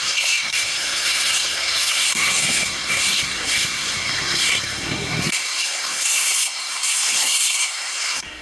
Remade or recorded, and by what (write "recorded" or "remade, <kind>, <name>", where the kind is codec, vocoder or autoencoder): remade, codec, SNAC